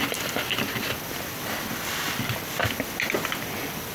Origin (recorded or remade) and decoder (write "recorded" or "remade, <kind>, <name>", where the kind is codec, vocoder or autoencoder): recorded